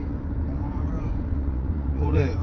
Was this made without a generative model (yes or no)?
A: no